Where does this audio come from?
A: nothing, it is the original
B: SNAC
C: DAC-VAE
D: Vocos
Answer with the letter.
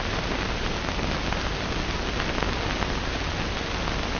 A